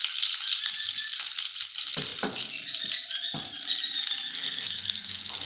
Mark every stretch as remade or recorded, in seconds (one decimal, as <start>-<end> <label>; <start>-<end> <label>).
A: 0.0-4.3 recorded; 4.3-5.4 remade